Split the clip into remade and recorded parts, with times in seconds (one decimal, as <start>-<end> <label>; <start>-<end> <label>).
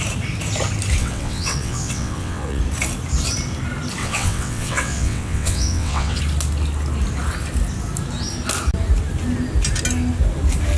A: 0.0-1.0 recorded; 1.0-2.6 remade; 2.6-4.0 recorded; 4.0-6.2 remade; 6.2-10.8 recorded